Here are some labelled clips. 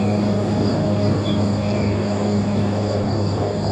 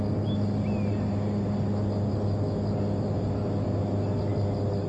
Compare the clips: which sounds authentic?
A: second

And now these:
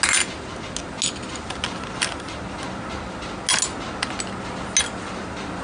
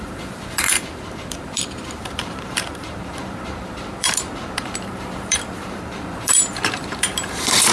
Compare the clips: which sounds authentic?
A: first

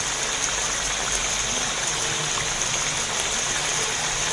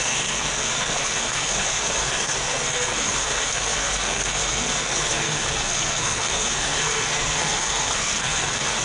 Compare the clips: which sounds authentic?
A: first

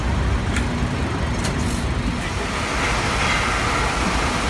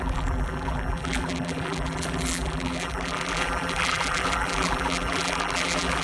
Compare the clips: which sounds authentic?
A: first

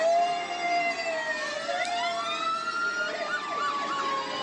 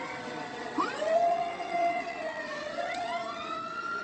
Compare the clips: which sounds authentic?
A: first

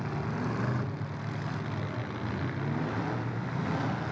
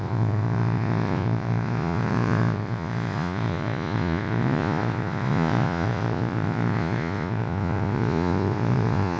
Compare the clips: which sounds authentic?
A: first